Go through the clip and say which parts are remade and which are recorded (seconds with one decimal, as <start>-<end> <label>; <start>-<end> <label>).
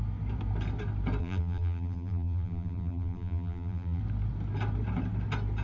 0.0-1.2 recorded; 1.2-4.0 remade; 4.0-5.6 recorded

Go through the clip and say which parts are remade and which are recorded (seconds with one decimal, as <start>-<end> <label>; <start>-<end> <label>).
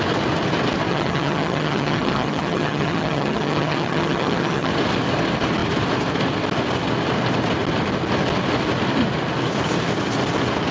0.0-0.9 recorded; 0.9-4.7 remade; 4.7-10.7 recorded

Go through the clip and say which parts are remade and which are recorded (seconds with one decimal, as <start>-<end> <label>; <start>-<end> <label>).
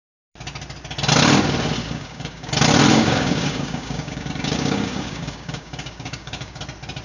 0.0-1.8 recorded; 1.8-2.5 remade; 2.5-2.9 recorded; 2.9-6.6 remade; 6.6-7.0 recorded